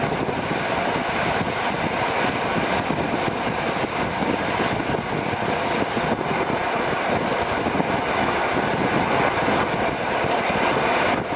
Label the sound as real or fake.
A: real